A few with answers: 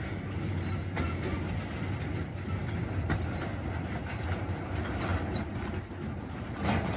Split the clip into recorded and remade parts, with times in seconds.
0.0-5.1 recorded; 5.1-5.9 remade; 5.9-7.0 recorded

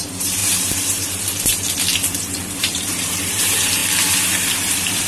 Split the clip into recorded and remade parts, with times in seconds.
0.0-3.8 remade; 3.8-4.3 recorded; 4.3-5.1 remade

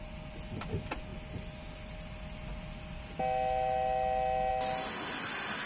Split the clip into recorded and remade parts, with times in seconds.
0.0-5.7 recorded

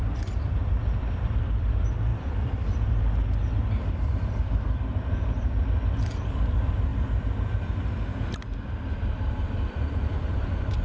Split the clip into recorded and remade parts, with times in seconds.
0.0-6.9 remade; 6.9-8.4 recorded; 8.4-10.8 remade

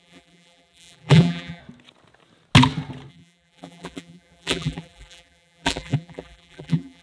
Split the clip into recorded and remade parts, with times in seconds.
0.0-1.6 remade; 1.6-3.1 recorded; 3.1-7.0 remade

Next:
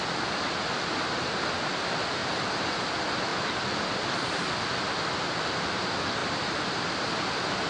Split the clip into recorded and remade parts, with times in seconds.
0.0-2.2 recorded; 2.2-2.9 remade; 2.9-6.2 recorded; 6.2-6.8 remade; 6.8-7.7 recorded